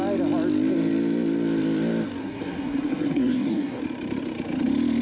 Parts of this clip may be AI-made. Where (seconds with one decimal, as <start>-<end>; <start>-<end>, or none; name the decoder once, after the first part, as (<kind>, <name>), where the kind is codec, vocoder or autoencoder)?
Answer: 2.2-3.8 (codec, SNAC)